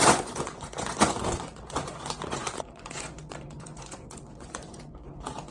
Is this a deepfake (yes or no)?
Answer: yes